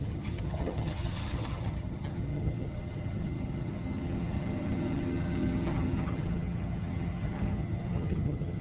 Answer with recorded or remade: remade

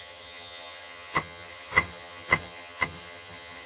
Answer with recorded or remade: remade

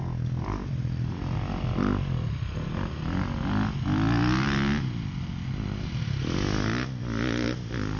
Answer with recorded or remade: recorded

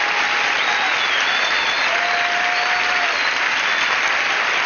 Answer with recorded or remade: recorded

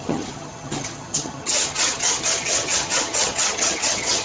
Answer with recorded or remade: remade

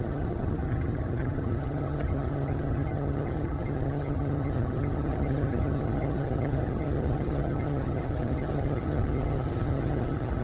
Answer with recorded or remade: remade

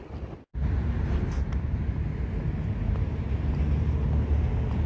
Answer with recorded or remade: recorded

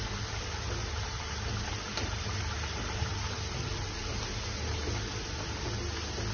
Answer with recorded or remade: recorded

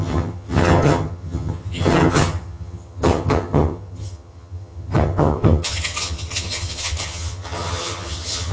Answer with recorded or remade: remade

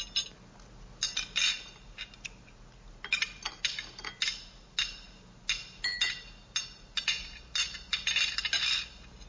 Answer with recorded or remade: recorded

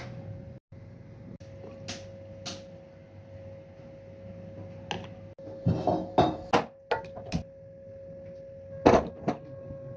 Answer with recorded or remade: recorded